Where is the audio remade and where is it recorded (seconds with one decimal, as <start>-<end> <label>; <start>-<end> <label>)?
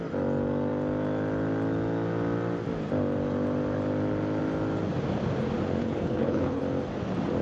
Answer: 0.0-5.8 recorded; 5.8-6.6 remade; 6.6-7.4 recorded